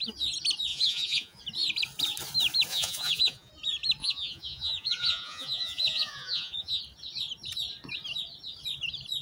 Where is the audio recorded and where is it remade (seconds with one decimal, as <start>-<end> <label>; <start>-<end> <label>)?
0.0-0.7 recorded; 0.7-1.4 remade; 1.4-2.7 recorded; 2.7-3.5 remade; 3.5-4.0 recorded; 4.0-6.8 remade; 6.8-9.2 recorded